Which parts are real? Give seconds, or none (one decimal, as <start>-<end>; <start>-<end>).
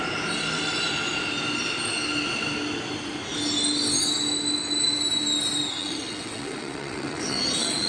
0.0-5.8